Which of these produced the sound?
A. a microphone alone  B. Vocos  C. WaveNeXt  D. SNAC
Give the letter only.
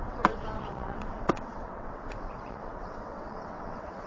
C